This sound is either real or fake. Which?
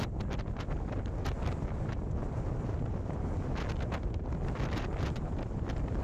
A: real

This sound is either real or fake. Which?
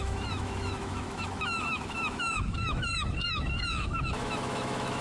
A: fake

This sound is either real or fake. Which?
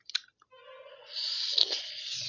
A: real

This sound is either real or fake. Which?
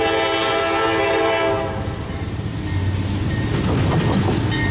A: real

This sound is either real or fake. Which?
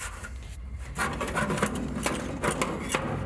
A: real